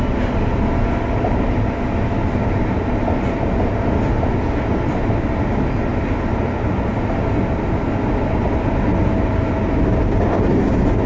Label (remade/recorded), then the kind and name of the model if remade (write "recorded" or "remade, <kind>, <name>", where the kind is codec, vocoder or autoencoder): recorded